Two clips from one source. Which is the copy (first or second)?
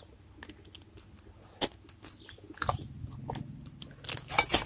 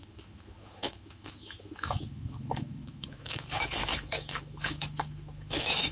second